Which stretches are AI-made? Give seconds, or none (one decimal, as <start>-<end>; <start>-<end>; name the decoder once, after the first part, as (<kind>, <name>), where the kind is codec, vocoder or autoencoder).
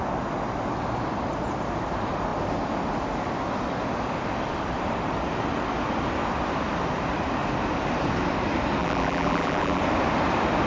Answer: 8.8-9.8 (vocoder, BigVGAN v2)